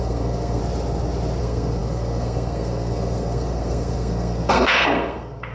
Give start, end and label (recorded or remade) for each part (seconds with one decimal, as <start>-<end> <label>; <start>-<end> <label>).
0.0-0.6 remade; 0.6-1.4 recorded; 1.4-5.5 remade